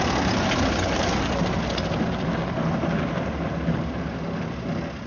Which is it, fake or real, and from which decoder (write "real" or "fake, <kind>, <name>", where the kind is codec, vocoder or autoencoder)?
real